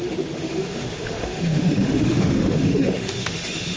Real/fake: fake